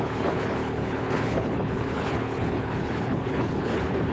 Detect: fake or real fake